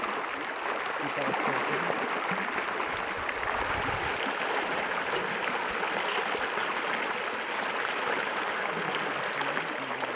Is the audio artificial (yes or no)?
no